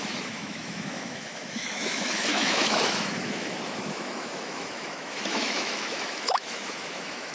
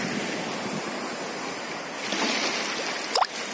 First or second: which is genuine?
second